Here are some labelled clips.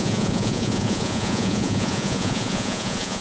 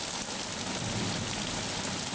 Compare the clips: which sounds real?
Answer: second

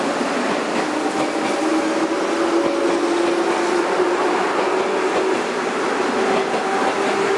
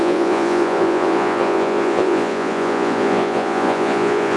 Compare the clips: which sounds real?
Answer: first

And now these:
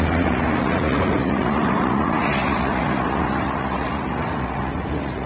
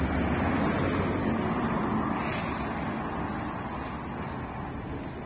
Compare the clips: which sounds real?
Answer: second